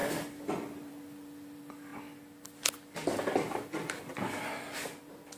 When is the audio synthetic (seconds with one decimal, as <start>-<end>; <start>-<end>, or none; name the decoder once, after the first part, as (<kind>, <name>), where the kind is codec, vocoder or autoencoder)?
0.0-1.9 (vocoder, BigVGAN v2)